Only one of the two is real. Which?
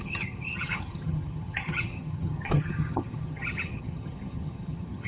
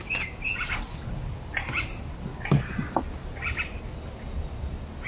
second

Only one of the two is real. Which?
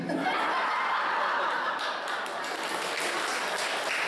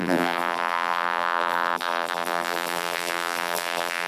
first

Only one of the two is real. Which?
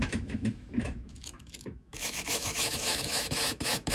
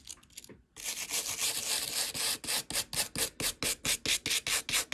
second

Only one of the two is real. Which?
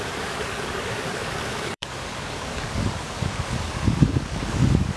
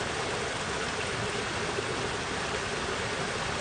second